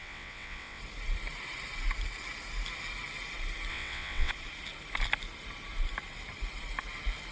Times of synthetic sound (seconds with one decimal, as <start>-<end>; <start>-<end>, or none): 0.0-0.8; 3.7-4.3